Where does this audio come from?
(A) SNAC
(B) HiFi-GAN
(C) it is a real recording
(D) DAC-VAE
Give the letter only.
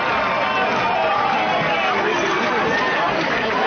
C